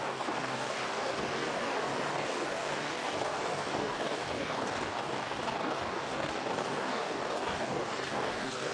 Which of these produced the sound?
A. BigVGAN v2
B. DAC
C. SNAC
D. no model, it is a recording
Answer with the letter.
B